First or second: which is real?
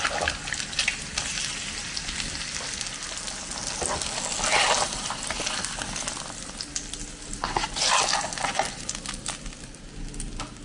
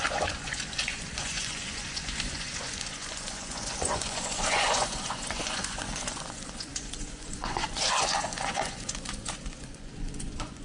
first